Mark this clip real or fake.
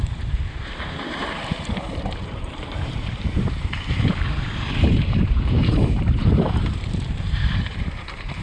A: fake